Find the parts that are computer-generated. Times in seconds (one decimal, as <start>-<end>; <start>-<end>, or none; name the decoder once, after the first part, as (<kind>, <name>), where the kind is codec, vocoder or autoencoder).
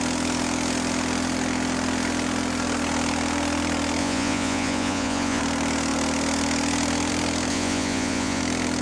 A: 4.0-5.4 (vocoder, Vocos); 7.5-8.4